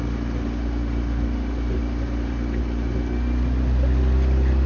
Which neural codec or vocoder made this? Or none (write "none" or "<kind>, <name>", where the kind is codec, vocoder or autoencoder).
none